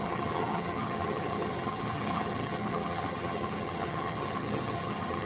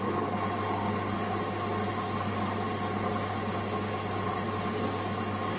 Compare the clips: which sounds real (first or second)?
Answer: second